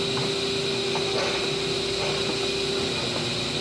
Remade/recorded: recorded